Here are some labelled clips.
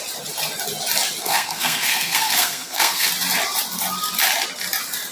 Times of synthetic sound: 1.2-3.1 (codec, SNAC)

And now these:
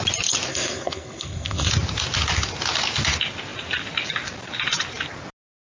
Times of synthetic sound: 0.5-1.7 (codec, SNAC)

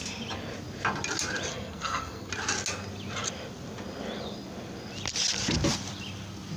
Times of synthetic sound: 1.5-2.3 (codec, SNAC)